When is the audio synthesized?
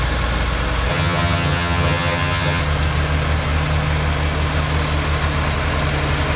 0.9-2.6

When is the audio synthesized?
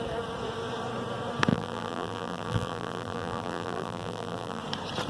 1.5-4.6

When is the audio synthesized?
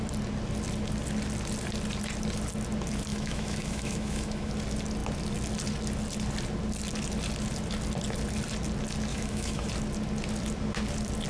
3.1-4.5; 9.1-9.7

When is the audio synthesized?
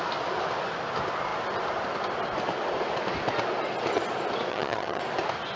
4.5-5.0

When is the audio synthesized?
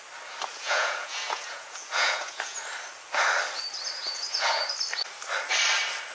0.5-2.6; 4.0-4.6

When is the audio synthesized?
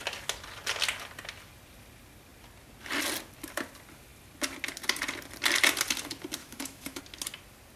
6.4-7.0